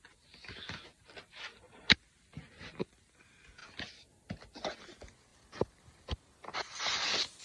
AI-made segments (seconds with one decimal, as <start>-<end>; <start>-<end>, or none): 0.9-2.0; 5.3-6.8